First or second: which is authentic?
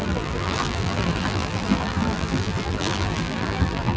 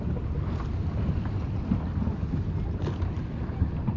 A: second